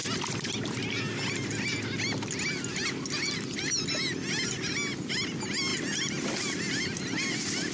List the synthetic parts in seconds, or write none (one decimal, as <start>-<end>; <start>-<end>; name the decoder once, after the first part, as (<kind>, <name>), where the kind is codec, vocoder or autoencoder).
none